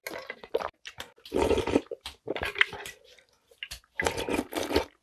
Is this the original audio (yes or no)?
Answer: yes